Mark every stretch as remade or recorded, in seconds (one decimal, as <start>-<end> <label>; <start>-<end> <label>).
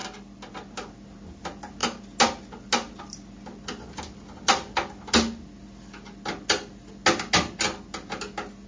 0.0-8.7 recorded